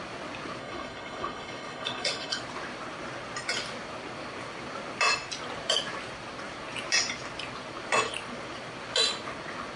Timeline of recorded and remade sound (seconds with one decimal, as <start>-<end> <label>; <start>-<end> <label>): 0.0-0.6 recorded; 0.6-2.4 remade; 2.4-9.8 recorded